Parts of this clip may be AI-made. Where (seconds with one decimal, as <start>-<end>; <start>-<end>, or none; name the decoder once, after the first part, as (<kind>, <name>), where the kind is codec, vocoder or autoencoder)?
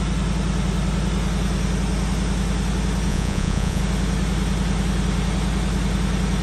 3.1-3.8 (vocoder, Vocos)